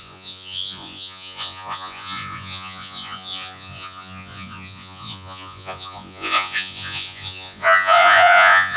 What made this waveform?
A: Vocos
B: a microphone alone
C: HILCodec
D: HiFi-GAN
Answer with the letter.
A